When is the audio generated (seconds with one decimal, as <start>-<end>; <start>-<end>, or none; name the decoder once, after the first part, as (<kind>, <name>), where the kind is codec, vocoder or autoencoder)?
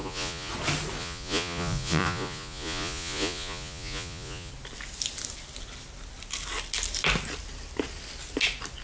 0.0-0.5 (vocoder, Vocos); 1.0-4.5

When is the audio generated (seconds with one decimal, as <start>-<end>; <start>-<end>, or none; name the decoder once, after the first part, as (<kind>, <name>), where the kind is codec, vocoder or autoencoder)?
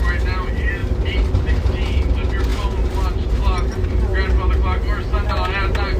none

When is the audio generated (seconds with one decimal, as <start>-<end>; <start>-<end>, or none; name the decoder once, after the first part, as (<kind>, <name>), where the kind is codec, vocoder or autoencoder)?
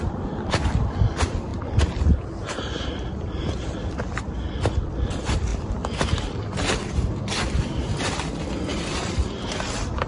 0.0-5.5 (vocoder, BigVGAN v2); 6.9-10.1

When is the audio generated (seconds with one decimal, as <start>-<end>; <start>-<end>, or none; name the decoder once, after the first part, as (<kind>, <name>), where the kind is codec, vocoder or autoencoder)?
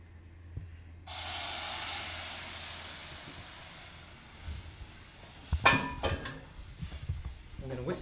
none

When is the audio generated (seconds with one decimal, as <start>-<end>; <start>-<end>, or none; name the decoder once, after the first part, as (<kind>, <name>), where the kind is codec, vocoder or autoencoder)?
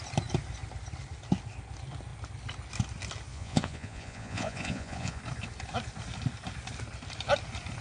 3.3-5.2 (vocoder, Vocos)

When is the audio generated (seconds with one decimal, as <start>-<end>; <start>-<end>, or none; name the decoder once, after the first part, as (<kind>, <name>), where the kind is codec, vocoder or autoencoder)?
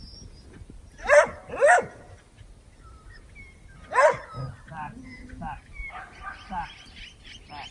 none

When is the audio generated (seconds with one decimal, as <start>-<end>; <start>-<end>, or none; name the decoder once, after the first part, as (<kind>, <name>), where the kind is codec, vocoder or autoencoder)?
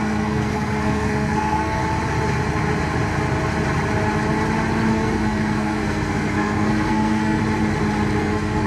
0.0-1.8 (codec, SNAC); 4.9-7.4; 8.2-8.7